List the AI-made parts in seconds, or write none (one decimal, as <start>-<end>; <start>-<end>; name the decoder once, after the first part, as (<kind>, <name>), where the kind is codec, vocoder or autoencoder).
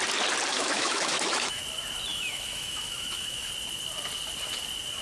0.5-1.6 (autoencoder, DAC-VAE); 2.1-3.5